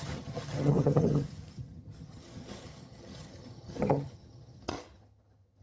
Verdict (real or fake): fake